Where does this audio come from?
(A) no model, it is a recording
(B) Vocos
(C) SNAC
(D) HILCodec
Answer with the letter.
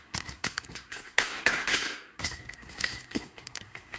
C